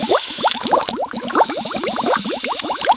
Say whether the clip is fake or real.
fake